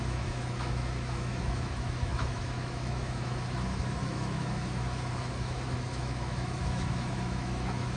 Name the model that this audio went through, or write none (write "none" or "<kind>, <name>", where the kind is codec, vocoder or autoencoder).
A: autoencoder, DAC-VAE